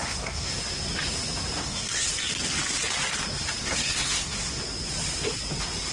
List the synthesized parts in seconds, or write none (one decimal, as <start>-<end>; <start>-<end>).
0.0-0.5; 1.6-2.1; 3.6-4.6